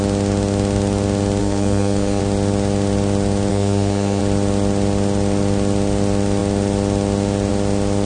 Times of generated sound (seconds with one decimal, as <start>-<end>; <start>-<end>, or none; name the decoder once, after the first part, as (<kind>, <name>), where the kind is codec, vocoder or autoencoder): 1.4-2.2 (codec, SNAC); 3.5-4.2